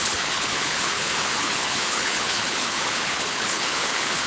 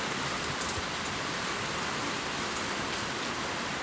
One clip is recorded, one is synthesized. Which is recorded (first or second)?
second